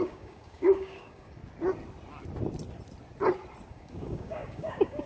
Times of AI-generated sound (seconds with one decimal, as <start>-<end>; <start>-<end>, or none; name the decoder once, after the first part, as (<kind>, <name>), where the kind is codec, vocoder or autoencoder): 0.0-1.4 (codec, DAC); 3.7-5.1